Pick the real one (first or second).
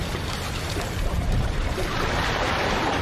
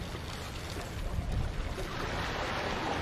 second